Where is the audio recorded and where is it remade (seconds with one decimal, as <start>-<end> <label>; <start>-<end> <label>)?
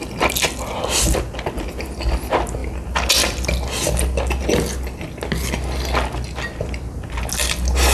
0.0-7.9 recorded